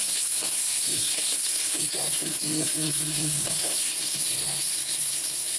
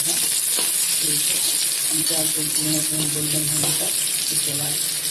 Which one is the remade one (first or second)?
first